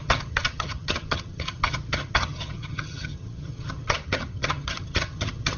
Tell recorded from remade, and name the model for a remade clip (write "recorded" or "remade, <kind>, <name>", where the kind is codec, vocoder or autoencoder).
remade, vocoder, HiFi-GAN